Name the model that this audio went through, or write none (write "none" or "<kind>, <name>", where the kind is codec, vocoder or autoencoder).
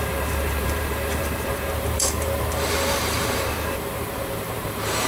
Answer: vocoder, BigVGAN v2